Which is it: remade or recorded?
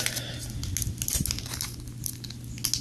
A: recorded